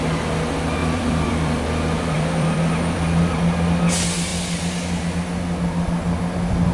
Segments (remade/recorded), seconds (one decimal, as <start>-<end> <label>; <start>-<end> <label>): 0.0-0.8 recorded; 0.8-3.4 remade; 3.4-6.7 recorded